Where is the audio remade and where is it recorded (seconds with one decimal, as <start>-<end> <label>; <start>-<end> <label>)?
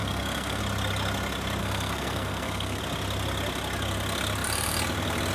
0.0-0.6 remade; 0.6-1.6 recorded; 1.6-2.8 remade; 2.8-5.3 recorded